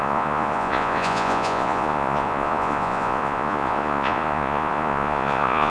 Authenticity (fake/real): fake